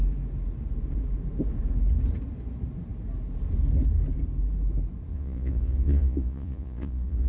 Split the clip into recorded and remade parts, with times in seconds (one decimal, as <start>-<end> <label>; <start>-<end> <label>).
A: 0.0-5.1 recorded; 5.1-7.3 remade

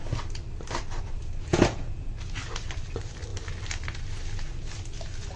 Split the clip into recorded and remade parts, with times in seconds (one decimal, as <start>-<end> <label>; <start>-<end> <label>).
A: 0.0-1.5 recorded; 1.5-2.1 remade; 2.1-5.4 recorded